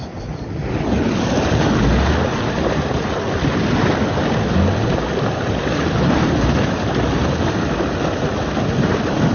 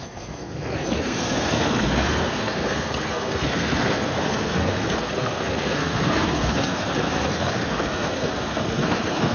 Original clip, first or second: first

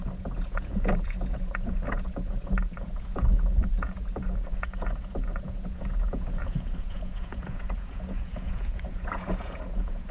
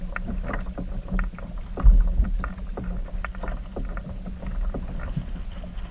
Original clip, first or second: second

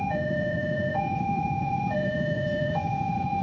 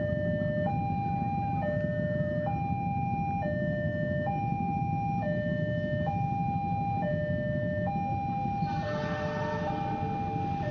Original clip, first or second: second